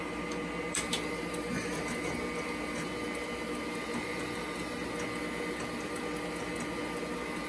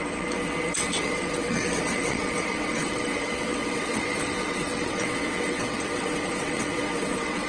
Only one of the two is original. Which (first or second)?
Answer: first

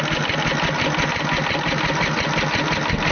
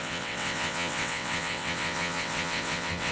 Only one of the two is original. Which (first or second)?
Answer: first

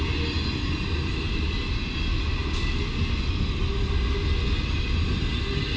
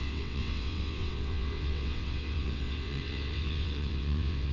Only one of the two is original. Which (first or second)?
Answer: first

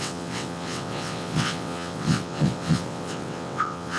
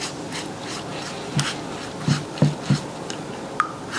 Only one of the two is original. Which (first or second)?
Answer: second